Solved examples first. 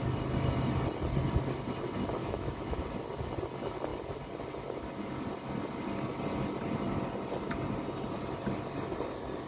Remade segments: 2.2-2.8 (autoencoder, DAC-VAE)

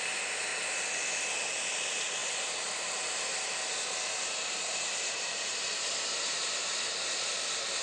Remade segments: 0.0-0.5 (vocoder, BigVGAN v2); 1.7-7.8

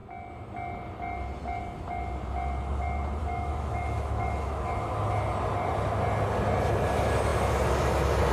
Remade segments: 3.2-4.7 (autoencoder, DAC-VAE)

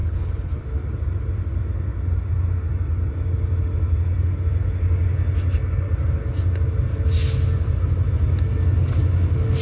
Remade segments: 0.0-0.6 (codec, HILCodec)

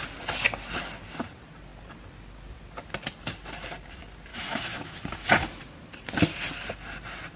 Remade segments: 4.3-5.6 (autoencoder, DAC-VAE)

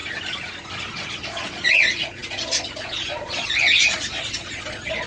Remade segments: 0.9-5.1 (vocoder, Vocos)

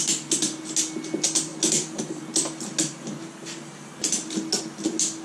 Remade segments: none